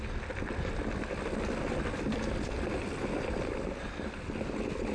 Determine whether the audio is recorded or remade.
recorded